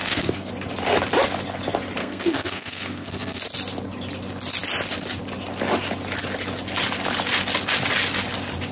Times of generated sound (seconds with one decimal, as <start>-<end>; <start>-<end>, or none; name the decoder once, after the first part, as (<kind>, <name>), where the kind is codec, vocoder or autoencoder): 0.0-0.5 (codec, SNAC); 2.0-3.4